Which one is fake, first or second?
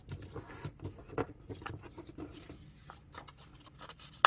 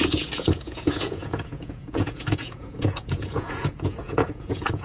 second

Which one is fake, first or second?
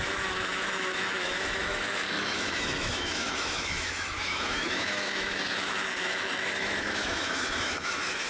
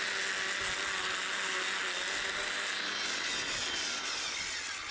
first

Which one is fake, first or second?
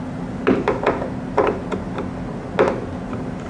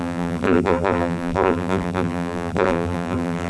second